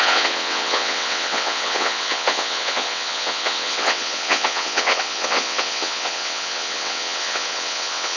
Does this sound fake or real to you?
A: fake